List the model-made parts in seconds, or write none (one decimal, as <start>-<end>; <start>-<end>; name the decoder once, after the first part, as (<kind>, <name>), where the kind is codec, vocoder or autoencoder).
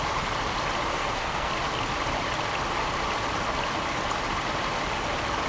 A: 0.9-1.5 (codec, SNAC)